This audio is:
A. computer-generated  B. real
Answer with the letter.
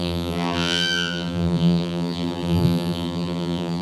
A